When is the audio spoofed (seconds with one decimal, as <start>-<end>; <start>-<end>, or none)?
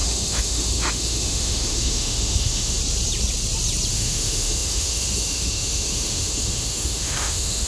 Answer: 0.0-2.8; 3.9-7.7